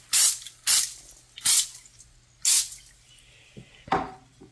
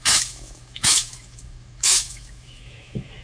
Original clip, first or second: first